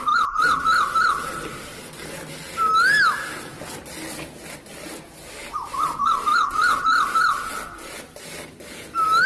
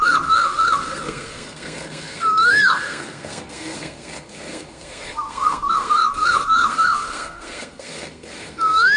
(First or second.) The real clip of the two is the first